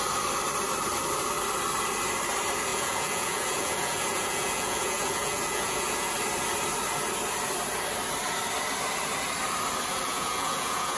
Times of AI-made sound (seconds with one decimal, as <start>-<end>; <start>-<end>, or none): 2.7-6.1; 9.9-11.0